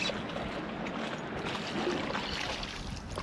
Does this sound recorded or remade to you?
recorded